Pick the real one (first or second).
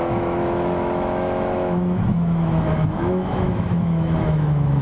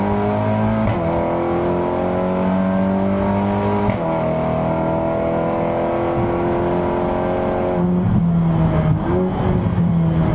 second